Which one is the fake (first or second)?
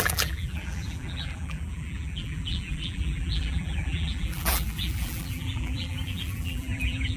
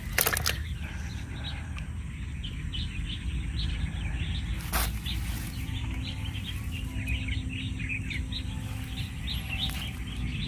first